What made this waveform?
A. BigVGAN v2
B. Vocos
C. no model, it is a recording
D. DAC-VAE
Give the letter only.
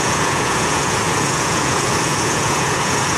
B